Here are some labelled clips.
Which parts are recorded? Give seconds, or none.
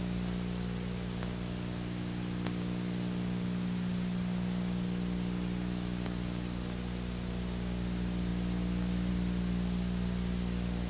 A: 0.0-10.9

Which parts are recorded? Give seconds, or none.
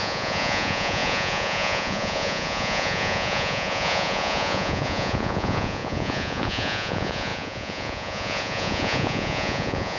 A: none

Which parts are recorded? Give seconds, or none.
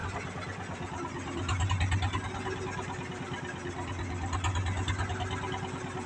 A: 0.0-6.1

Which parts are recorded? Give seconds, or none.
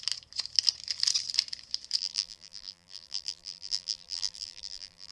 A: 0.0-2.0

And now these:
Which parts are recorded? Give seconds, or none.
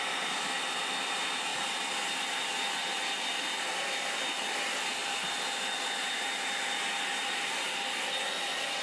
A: 0.0-8.8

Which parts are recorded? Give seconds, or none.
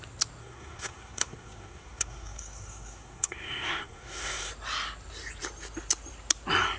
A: 0.0-0.4; 4.5-6.8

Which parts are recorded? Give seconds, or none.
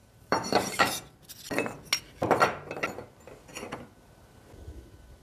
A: 1.1-5.2